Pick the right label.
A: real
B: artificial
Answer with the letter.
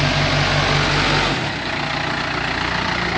A